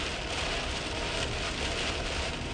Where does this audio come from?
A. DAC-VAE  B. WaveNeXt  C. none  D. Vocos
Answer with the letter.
C